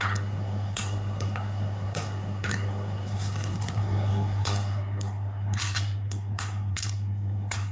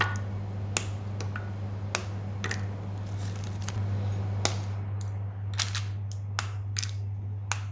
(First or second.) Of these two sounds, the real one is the second